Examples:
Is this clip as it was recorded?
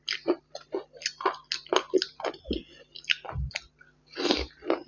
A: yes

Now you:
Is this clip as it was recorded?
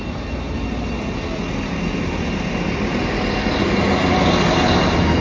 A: yes